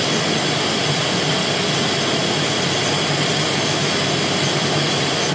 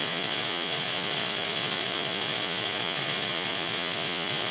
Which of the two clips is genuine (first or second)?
first